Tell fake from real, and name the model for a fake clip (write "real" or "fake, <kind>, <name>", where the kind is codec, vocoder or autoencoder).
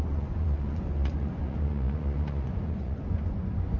fake, vocoder, Vocos